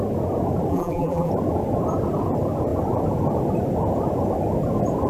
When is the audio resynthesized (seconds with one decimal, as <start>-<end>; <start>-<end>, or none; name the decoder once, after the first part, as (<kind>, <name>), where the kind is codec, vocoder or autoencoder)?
0.7-1.3 (vocoder, BigVGAN v2)